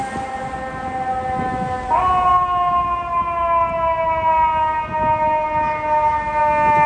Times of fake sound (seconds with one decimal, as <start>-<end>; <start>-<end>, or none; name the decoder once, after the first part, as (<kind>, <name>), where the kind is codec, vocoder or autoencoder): none